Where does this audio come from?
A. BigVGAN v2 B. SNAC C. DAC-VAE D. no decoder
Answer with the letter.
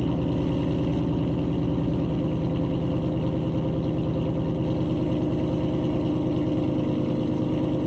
D